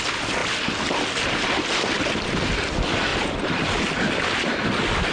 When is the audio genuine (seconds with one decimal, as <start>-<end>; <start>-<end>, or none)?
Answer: 0.0-3.1; 3.6-5.1